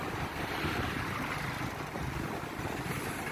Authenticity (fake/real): real